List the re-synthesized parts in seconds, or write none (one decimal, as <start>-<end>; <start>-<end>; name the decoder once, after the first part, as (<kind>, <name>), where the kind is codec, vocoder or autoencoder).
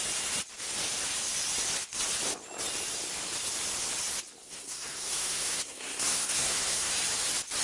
4.4-6.9 (codec, SNAC)